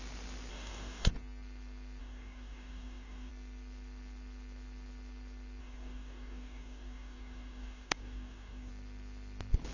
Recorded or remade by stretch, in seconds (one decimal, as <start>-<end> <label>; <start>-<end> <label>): 0.0-0.5 recorded; 0.5-1.1 remade; 1.1-2.0 recorded; 2.0-3.3 remade; 3.3-5.6 recorded; 5.6-8.7 remade; 8.7-9.7 recorded